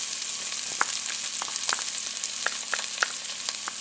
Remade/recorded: recorded